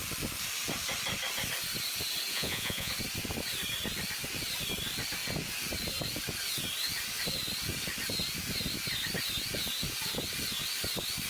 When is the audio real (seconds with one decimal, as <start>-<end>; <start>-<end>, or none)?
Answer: 0.0-2.3; 2.9-11.3